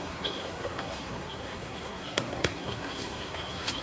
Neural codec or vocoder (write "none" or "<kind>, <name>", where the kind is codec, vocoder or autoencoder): codec, SNAC